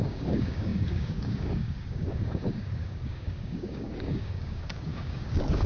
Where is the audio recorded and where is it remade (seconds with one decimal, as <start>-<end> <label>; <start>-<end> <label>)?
0.0-5.7 remade